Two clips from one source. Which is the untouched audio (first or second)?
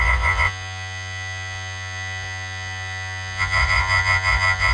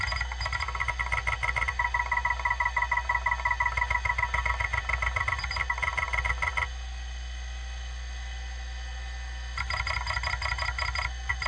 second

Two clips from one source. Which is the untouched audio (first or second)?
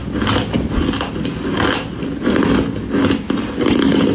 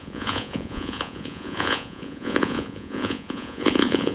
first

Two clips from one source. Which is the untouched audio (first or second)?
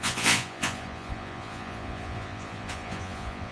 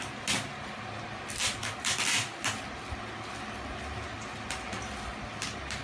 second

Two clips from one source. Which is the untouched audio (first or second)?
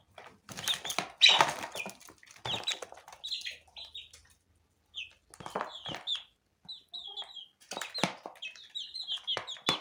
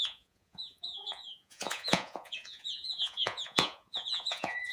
first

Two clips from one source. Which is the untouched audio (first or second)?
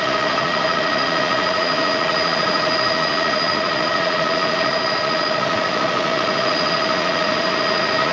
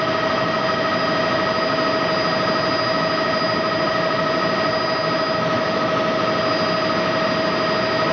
second